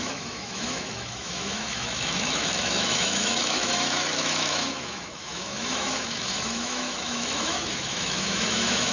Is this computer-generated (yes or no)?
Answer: yes